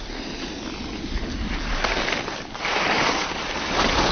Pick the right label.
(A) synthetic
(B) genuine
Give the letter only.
B